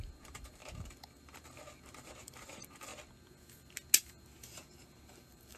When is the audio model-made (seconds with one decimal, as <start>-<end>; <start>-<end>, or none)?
0.0-2.9; 4.4-5.6